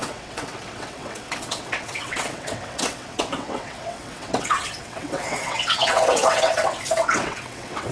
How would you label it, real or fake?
fake